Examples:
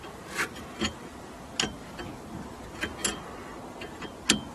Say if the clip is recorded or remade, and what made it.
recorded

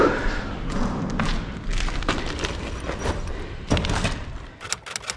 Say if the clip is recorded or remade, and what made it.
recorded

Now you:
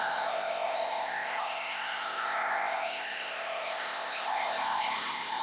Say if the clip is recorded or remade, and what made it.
remade, codec, ZipCodec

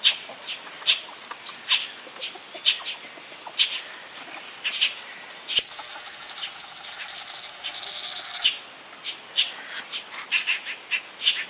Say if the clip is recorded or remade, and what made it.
recorded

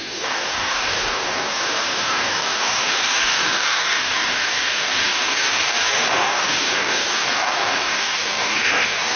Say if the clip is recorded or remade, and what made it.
remade, codec, DAC